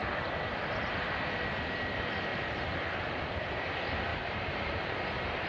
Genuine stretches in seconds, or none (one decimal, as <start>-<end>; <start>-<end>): 0.0-2.3; 2.9-4.1